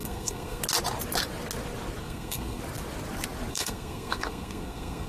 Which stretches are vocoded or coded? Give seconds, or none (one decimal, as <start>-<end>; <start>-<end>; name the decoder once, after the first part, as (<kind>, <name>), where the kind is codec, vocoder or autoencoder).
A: 0.0-0.6 (codec, SNAC); 2.0-2.6; 3.5-5.1